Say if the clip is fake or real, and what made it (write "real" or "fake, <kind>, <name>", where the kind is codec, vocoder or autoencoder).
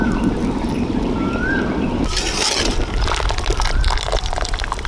real